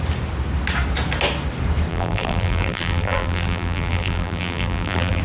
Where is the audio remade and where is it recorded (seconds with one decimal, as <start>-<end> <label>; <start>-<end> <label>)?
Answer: 0.0-1.9 recorded; 1.9-5.2 remade

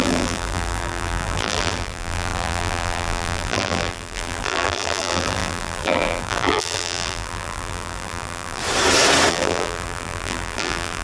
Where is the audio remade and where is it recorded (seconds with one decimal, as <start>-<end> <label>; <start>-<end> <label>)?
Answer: 0.0-8.6 remade; 8.6-9.3 recorded; 9.3-11.0 remade

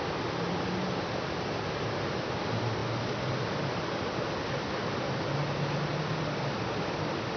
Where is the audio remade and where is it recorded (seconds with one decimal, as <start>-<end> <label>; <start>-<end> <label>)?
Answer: 0.0-7.4 recorded